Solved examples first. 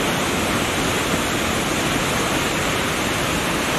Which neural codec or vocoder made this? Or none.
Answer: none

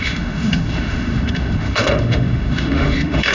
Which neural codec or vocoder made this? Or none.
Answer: autoencoder, DAC-VAE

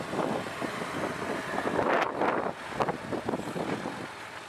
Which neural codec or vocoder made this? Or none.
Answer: none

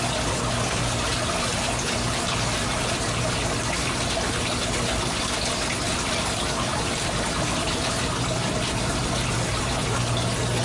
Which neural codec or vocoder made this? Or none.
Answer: none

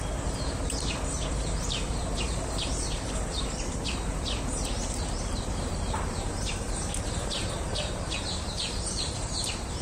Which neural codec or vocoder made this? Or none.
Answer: vocoder, BigVGAN v2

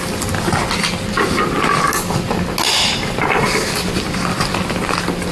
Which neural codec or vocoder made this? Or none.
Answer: none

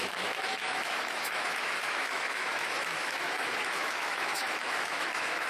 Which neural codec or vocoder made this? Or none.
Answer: autoencoder, DAC-VAE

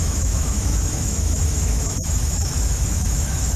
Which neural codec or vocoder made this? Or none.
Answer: autoencoder, DAC-VAE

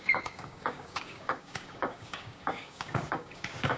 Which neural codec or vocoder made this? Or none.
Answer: codec, DAC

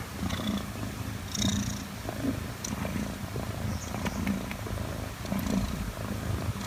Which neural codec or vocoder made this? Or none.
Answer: vocoder, BigVGAN v2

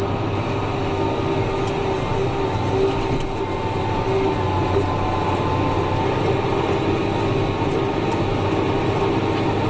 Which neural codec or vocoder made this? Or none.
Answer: none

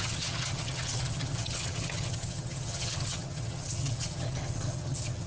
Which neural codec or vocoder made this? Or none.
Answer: vocoder, HiFi-GAN